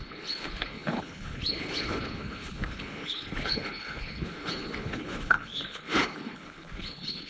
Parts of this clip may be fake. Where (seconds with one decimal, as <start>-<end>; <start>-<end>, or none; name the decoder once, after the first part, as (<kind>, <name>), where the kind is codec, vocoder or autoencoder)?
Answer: 0.0-7.3 (codec, HILCodec)